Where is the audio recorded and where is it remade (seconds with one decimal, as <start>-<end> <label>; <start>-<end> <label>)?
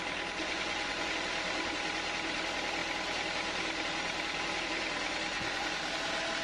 0.0-0.4 recorded; 0.4-1.1 remade; 1.1-5.3 recorded; 5.3-5.8 remade; 5.8-6.4 recorded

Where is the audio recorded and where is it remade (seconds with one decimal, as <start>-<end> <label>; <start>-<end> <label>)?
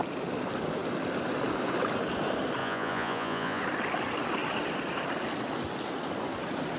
0.0-2.6 recorded; 2.6-3.6 remade; 3.6-6.8 recorded